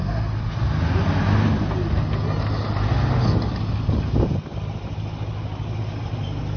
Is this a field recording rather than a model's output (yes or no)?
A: yes